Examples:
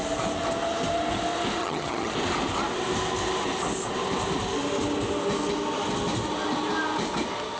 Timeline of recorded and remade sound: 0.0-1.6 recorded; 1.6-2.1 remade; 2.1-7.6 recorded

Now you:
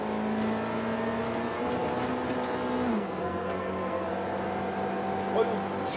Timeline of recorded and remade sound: 0.0-2.9 recorded; 2.9-4.1 remade; 4.1-6.0 recorded

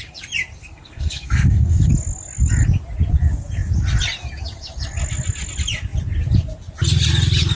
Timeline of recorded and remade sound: 0.0-0.6 recorded; 0.6-1.9 remade; 1.9-7.5 recorded

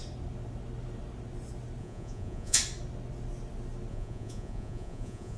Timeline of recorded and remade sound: 0.0-1.8 recorded; 1.8-2.6 remade; 2.6-3.9 recorded; 3.9-5.4 remade

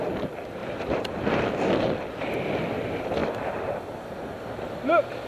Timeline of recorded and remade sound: 0.0-0.6 recorded; 0.6-1.2 remade; 1.2-3.2 recorded; 3.2-4.4 remade; 4.4-5.3 recorded

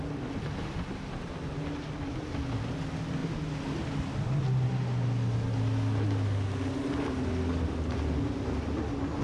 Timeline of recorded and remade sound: 0.0-9.2 recorded

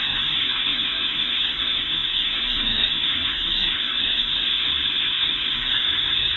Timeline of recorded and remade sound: 0.0-6.4 remade